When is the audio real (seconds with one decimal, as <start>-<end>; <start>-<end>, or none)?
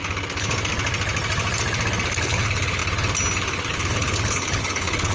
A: 0.0-2.2; 2.8-3.7